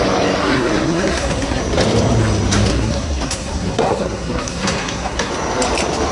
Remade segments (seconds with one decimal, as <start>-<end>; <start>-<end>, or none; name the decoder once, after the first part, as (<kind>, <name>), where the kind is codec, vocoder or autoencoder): 0.4-1.6 (codec, SNAC); 2.7-5.3